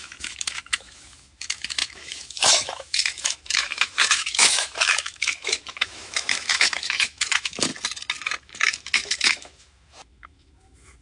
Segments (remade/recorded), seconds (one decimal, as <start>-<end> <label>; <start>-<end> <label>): 0.0-7.7 remade; 7.7-8.4 recorded; 8.4-11.0 remade